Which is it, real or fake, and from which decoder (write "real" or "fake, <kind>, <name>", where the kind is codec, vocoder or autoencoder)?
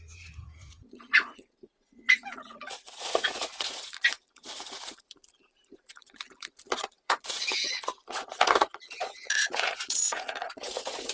fake, vocoder, Vocos